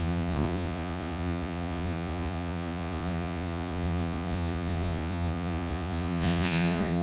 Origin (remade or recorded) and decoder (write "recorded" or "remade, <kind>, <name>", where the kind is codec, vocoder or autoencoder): remade, vocoder, Vocos